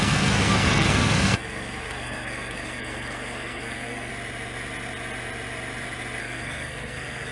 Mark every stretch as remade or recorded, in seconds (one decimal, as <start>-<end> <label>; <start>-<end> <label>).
0.0-4.1 remade; 4.1-6.2 recorded; 6.2-7.3 remade